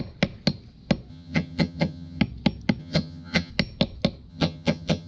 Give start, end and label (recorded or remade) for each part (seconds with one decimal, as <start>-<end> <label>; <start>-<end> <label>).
0.0-1.1 recorded; 1.1-2.2 remade; 2.2-2.8 recorded; 2.8-3.5 remade; 3.5-4.3 recorded; 4.3-5.1 remade